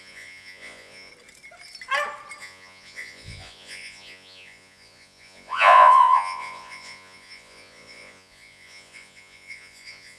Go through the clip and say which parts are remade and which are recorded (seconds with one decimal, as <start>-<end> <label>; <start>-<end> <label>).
0.0-1.1 remade; 1.1-2.4 recorded; 2.4-10.2 remade